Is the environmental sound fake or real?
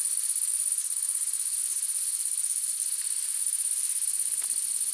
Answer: real